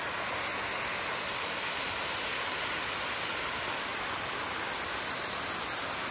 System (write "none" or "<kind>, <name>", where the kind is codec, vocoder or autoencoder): none